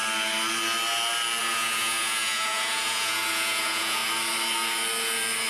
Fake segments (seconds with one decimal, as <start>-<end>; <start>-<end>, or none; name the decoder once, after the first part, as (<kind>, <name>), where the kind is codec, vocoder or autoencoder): 1.4-4.0 (vocoder, Vocos)